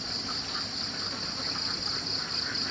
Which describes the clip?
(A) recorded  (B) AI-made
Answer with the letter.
A